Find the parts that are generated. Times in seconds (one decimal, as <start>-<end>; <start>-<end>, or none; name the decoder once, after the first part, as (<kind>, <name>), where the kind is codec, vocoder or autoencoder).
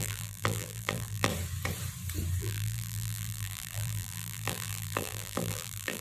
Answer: 0.0-1.3 (vocoder, BigVGAN v2); 2.4-6.0